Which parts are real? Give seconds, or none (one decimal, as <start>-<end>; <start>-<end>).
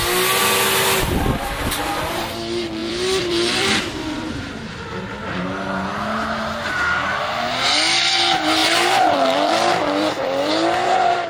0.0-2.8; 4.8-8.6; 10.5-11.3